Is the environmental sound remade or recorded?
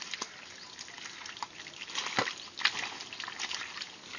recorded